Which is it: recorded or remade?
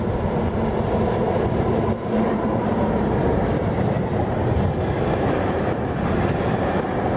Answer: remade